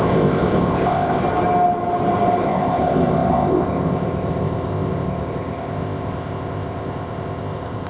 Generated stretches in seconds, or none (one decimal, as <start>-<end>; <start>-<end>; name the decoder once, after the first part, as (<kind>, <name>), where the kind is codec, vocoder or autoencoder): 0.0-1.2 (codec, ZipCodec); 2.4-7.9